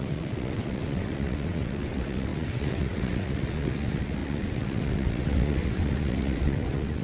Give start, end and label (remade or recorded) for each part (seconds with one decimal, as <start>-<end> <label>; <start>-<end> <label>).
0.0-7.0 remade